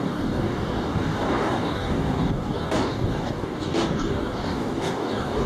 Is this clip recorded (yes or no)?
no